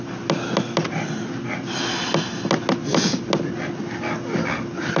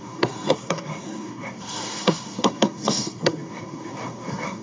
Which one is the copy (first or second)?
second